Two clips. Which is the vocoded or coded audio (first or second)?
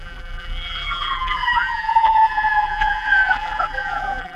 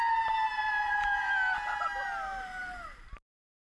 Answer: first